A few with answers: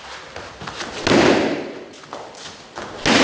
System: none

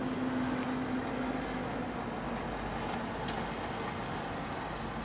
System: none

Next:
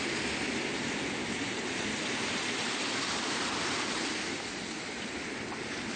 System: none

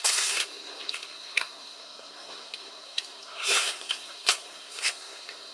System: codec, SNAC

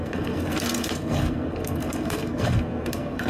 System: codec, SNAC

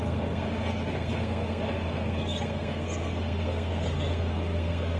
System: codec, SNAC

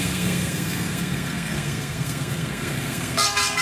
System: codec, SNAC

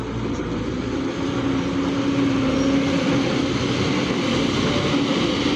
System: none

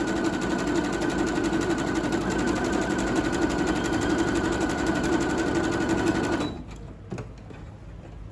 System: none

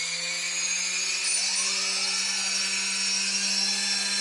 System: none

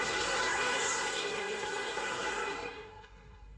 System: codec, SNAC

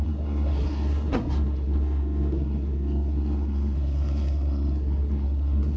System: codec, SNAC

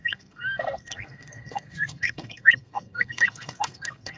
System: codec, SNAC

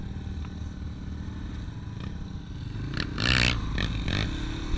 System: none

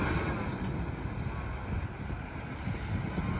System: none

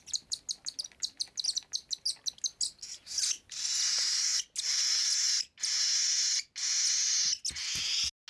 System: none